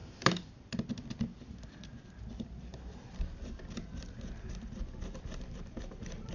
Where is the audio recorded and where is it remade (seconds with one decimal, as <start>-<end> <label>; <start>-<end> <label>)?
0.0-6.3 recorded